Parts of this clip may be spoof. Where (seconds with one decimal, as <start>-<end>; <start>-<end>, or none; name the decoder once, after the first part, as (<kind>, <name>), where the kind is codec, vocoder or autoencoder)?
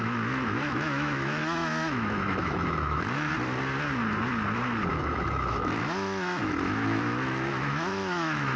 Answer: 0.0-3.3 (autoencoder, DAC-VAE); 4.9-8.6